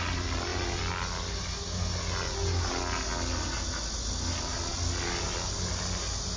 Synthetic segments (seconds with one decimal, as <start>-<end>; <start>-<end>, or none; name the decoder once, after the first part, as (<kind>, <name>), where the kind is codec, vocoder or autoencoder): none